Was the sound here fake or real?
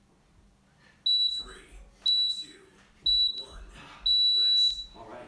real